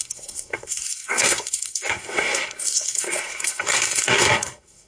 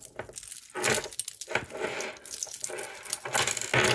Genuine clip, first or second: second